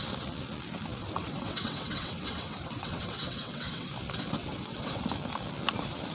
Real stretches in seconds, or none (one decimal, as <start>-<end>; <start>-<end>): 0.0-1.0; 3.9-4.4; 5.0-6.1